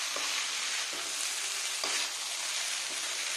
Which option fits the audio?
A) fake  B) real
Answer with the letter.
B